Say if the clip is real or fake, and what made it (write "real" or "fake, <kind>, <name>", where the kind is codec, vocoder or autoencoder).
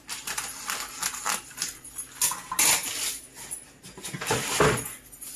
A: real